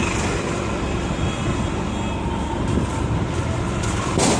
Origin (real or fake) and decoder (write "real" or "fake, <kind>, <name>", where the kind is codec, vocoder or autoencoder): real